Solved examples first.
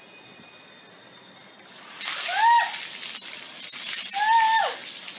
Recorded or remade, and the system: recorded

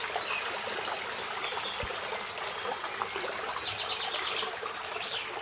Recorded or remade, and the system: recorded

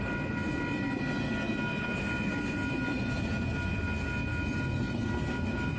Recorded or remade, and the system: recorded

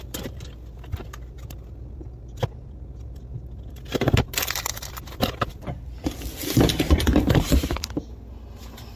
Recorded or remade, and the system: recorded